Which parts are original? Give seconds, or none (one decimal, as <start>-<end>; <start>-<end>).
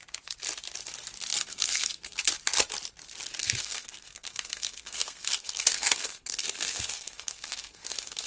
0.0-1.3; 2.2-3.4